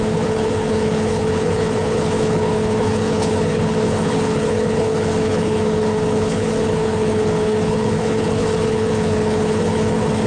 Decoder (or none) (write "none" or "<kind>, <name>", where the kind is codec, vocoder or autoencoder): codec, HILCodec